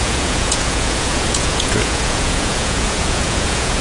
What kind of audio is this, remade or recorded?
remade